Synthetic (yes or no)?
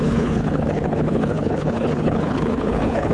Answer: yes